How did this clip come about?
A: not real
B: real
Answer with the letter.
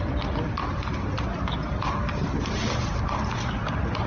B